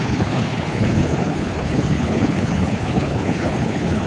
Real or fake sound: fake